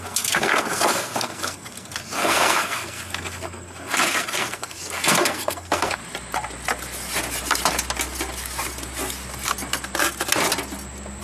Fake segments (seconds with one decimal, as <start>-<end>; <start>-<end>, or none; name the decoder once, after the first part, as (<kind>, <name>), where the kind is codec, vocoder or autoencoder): 0.0-6.0 (codec, SNAC)